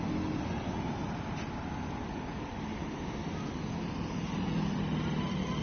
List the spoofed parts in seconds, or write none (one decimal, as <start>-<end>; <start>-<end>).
none